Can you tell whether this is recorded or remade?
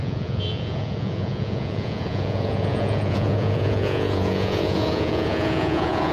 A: remade